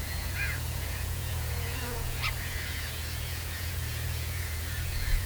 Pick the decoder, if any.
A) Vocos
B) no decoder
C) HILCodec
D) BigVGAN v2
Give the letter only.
A